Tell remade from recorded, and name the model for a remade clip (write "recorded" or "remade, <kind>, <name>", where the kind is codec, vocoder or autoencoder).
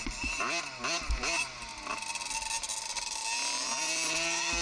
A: recorded